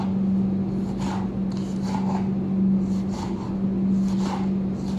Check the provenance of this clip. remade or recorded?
recorded